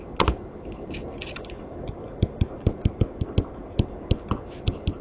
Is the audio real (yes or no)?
yes